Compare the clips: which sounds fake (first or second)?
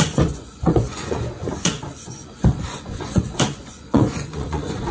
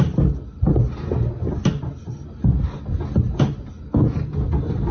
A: first